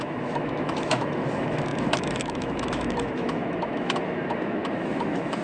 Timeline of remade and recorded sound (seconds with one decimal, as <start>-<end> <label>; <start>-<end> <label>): 0.0-5.4 remade